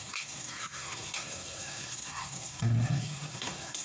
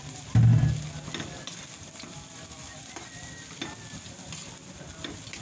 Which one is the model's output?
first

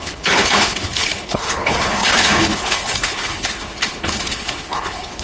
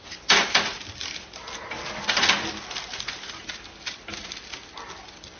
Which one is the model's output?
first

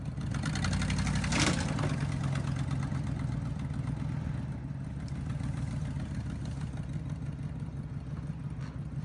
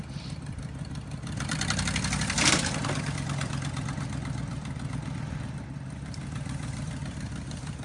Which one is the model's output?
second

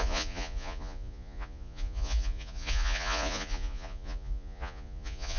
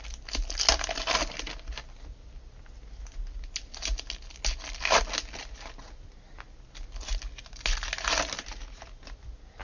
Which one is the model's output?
first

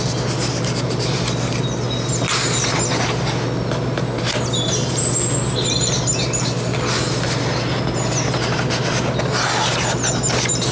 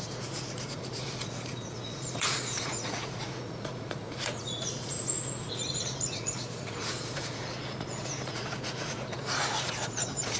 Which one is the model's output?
second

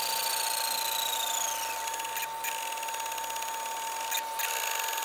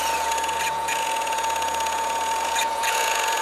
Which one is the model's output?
second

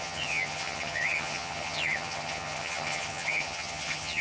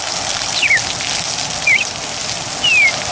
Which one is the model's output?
first